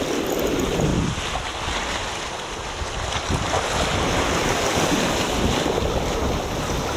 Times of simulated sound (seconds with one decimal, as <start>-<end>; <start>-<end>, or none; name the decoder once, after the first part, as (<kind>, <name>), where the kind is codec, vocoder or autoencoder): none

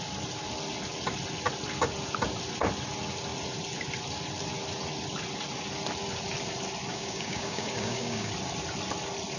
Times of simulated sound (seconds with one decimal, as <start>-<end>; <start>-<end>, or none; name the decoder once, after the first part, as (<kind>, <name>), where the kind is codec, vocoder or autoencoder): 6.9-8.3 (codec, DAC)

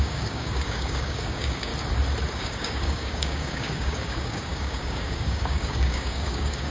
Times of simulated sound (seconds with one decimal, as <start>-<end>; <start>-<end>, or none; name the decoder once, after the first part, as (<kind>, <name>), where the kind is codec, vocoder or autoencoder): 0.0-1.7 (codec, DAC); 2.4-6.7

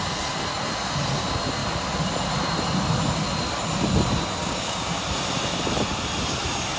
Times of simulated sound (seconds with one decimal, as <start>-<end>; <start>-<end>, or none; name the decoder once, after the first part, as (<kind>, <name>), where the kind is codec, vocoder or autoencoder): 4.4-5.0 (codec, DAC)

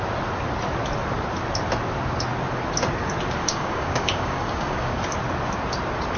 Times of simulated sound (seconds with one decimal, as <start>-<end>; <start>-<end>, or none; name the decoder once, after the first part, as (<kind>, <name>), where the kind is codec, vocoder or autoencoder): 3.4-5.0 (codec, DAC)

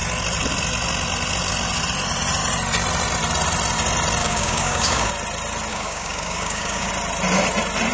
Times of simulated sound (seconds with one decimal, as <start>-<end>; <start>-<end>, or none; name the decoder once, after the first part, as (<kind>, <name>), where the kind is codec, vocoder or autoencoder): 4.2-5.1 (codec, DAC); 5.7-6.9

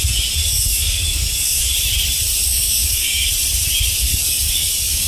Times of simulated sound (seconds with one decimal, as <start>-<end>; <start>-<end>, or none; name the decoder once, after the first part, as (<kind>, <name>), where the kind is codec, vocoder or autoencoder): 0.4-1.6 (codec, DAC); 2.5-3.3; 4.1-5.1